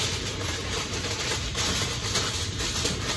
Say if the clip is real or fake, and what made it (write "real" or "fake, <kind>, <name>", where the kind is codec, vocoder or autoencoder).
fake, vocoder, BigVGAN v2